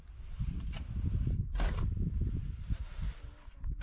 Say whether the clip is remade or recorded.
recorded